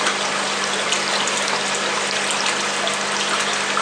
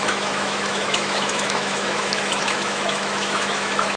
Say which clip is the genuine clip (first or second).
first